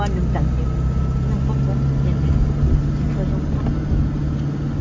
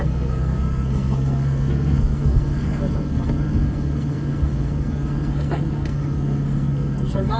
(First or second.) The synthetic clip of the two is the second